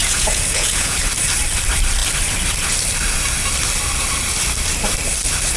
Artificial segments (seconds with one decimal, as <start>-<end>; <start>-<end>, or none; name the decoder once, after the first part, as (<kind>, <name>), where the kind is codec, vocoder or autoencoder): 0.0-1.0 (vocoder, Vocos)